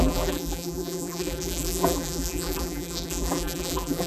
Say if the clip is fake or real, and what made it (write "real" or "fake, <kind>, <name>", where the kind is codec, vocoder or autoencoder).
fake, vocoder, BigVGAN v2